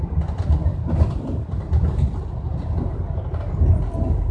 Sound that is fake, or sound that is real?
real